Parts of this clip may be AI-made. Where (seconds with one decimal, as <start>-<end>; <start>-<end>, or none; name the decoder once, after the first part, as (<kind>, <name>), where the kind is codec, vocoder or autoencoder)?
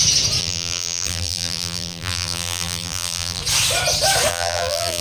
0.4-3.4 (vocoder, BigVGAN v2); 4.3-5.0